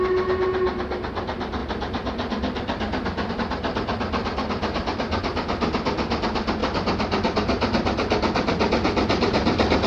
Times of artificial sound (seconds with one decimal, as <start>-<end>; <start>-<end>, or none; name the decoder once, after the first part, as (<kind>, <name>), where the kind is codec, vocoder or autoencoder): none